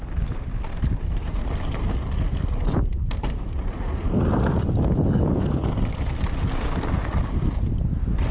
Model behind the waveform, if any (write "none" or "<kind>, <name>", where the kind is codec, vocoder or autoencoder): none